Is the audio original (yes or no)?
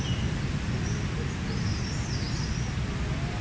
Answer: yes